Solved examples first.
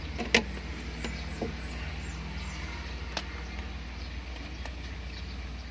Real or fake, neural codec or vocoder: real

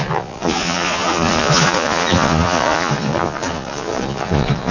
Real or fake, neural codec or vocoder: fake, vocoder, Vocos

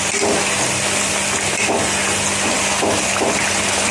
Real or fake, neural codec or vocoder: real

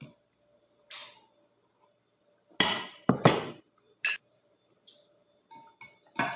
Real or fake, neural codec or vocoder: real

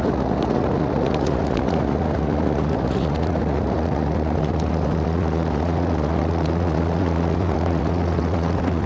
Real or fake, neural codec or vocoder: fake, vocoder, Vocos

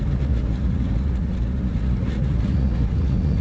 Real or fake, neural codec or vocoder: fake, vocoder, Vocos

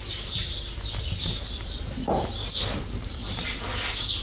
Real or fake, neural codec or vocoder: real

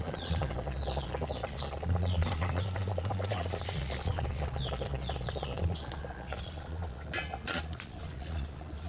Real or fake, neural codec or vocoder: fake, vocoder, Vocos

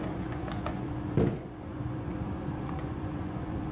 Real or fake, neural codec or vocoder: fake, vocoder, Vocos